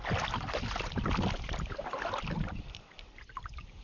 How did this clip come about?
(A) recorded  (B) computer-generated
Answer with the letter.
A